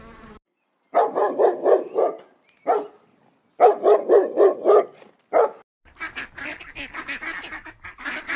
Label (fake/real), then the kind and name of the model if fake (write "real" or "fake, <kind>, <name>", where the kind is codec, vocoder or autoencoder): real